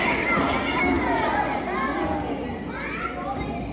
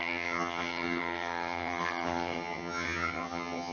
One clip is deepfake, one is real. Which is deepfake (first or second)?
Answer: second